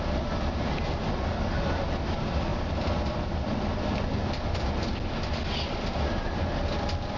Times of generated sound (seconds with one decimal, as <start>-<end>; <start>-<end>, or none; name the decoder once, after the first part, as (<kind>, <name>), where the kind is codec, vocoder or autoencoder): none